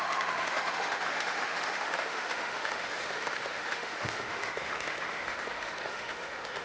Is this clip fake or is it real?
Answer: fake